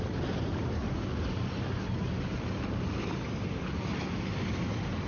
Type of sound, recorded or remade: recorded